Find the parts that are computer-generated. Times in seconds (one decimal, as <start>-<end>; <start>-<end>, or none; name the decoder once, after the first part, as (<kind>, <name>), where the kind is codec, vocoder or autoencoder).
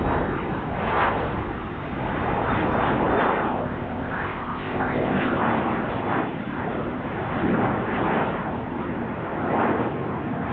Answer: 3.5-5.4 (codec, ZipCodec)